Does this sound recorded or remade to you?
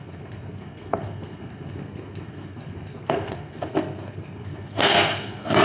remade